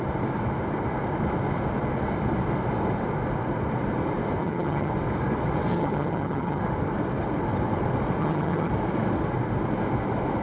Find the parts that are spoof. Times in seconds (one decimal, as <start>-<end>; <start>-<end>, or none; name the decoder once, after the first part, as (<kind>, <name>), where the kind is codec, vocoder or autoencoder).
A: 4.4-4.9 (vocoder, HiFi-GAN); 5.7-6.6; 8.2-8.7